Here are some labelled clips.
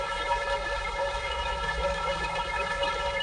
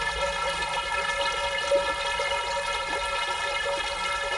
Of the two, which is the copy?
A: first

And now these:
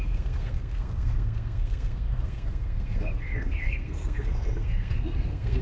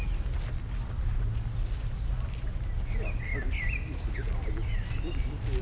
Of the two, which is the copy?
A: first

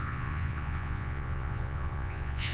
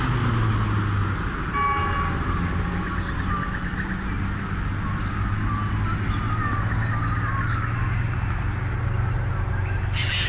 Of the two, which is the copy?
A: first